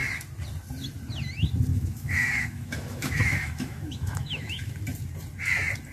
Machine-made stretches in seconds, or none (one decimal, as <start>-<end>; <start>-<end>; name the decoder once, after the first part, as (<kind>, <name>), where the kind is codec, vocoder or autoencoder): 1.7-4.7 (autoencoder, DAC-VAE)